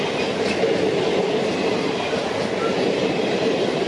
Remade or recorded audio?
recorded